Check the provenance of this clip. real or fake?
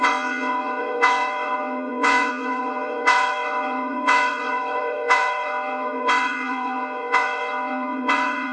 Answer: fake